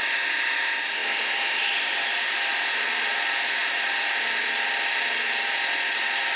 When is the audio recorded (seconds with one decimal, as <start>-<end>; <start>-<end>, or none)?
0.0-6.4